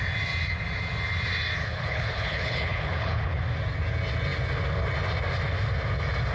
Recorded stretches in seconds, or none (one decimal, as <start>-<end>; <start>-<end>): 0.0-1.6; 3.4-6.3